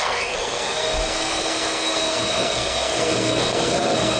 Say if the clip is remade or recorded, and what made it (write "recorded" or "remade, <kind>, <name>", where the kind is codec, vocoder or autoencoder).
remade, codec, SNAC